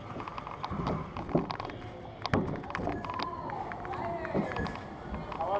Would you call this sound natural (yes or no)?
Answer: yes